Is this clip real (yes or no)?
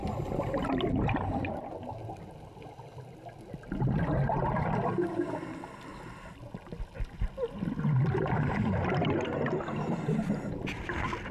yes